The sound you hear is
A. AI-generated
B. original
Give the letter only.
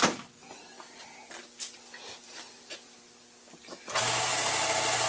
B